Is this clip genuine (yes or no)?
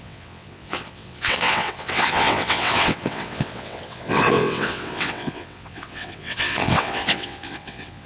no